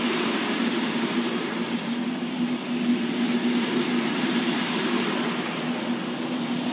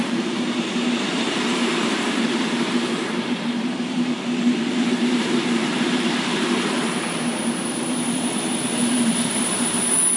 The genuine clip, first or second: first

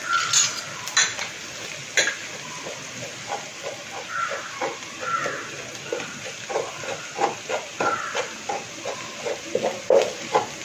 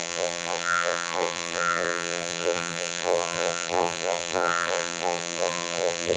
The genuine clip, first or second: first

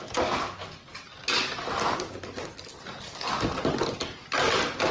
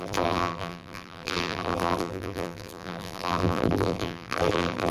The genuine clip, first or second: first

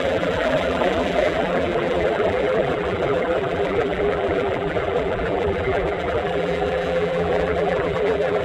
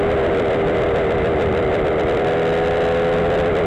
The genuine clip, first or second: second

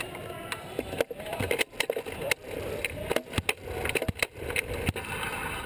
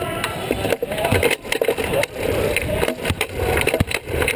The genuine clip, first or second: first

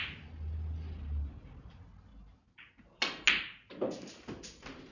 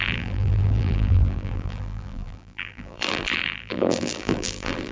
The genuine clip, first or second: first